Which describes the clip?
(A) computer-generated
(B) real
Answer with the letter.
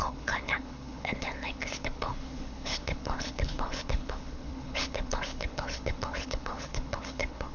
A